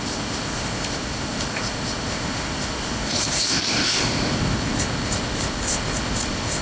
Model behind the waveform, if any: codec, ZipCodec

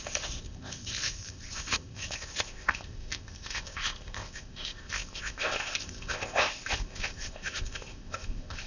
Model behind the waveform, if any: codec, ZipCodec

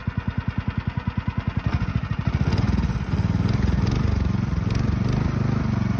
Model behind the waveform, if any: none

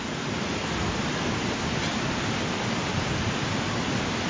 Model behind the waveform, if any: none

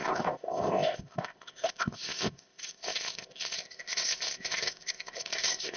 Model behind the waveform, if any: codec, ZipCodec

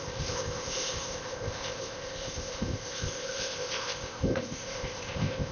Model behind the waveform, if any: codec, ZipCodec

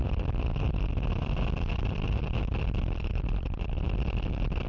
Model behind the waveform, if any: none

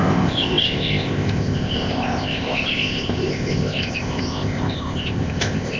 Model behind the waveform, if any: codec, ZipCodec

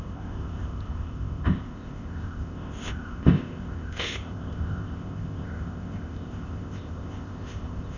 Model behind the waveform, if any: codec, ZipCodec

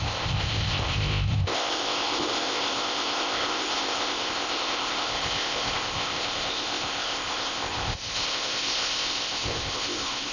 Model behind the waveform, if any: codec, ZipCodec